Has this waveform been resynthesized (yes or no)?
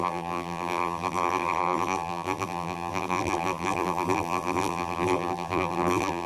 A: yes